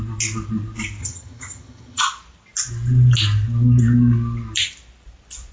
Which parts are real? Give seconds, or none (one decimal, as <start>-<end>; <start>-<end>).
0.0-1.0; 2.0-5.5